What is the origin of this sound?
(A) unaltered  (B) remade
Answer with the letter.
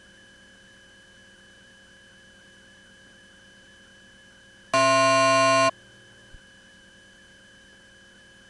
A